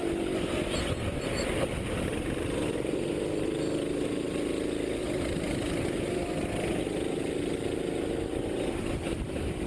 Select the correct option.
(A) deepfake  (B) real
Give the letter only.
B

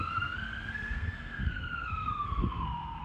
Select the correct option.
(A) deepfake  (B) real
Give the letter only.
A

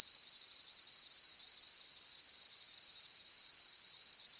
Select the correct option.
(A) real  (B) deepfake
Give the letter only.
A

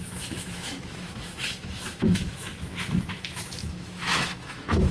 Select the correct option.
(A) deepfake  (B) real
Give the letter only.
A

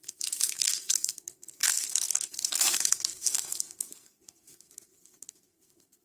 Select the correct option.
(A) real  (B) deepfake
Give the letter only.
B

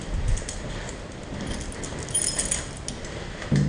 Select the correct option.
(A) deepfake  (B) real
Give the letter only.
B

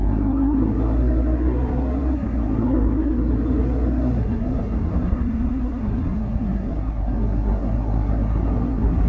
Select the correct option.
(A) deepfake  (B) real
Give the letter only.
A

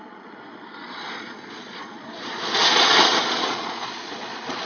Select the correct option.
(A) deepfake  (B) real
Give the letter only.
A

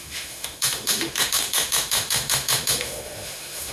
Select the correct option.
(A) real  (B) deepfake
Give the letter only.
B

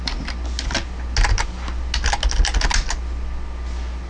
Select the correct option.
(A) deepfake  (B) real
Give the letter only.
B